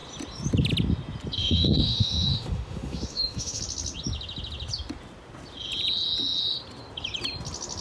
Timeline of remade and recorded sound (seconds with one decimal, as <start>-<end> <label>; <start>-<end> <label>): 0.0-1.4 recorded; 1.4-3.6 remade; 3.6-7.8 recorded